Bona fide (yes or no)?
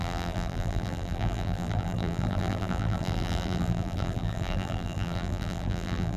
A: no